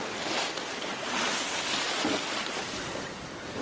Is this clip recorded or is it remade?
recorded